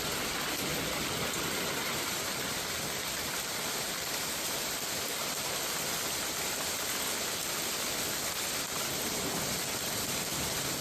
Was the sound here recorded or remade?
recorded